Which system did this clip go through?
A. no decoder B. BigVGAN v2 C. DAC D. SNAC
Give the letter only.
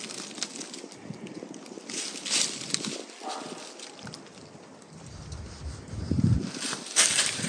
B